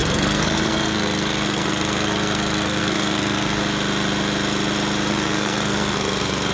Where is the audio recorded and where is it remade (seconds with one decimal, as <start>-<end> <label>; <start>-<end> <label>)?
0.0-3.6 remade; 3.6-5.1 recorded; 5.1-6.5 remade